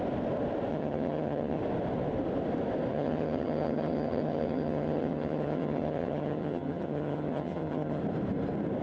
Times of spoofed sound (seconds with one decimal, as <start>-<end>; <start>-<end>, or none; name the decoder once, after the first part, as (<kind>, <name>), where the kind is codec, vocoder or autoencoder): 0.7-1.6 (vocoder, HiFi-GAN); 2.9-8.0